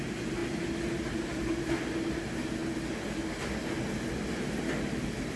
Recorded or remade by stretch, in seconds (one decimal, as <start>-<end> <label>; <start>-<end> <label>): 0.0-5.4 recorded